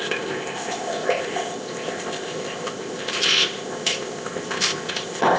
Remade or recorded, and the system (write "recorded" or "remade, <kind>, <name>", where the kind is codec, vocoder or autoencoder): remade, codec, ZipCodec